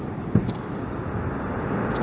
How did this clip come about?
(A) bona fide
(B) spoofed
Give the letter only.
A